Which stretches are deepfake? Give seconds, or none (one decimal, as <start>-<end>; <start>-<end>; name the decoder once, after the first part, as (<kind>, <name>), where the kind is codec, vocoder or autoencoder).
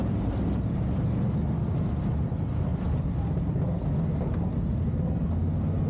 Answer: 2.7-3.9 (vocoder, BigVGAN v2)